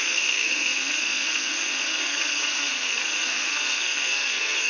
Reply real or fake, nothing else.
fake